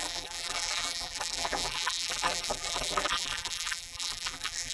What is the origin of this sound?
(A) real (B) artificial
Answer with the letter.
B